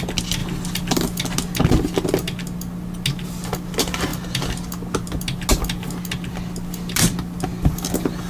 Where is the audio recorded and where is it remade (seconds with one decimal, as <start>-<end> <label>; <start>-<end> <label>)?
0.0-8.3 recorded